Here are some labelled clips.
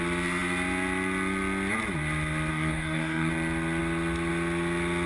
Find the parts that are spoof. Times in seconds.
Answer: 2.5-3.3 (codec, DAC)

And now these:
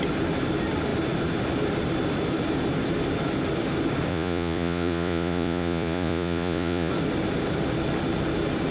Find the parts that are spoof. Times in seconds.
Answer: 4.1-6.9 (vocoder, Vocos)